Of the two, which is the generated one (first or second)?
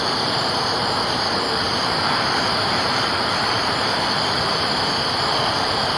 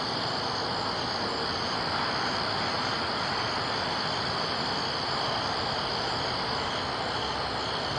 first